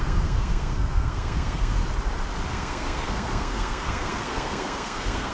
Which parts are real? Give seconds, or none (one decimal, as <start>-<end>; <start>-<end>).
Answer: 1.8-2.5